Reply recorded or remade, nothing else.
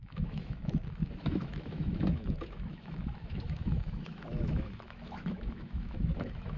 remade